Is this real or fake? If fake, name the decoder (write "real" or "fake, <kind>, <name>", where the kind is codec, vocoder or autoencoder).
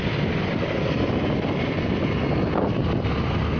real